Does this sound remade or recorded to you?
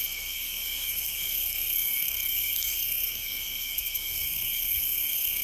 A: remade